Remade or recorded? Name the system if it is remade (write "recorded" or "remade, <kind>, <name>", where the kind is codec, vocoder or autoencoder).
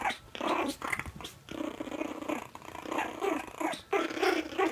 recorded